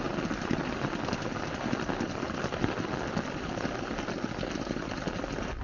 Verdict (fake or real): real